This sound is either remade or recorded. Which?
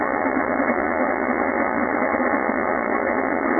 remade